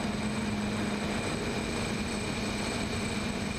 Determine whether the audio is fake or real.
real